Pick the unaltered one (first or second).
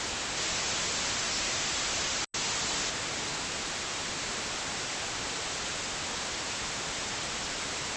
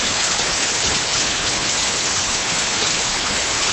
first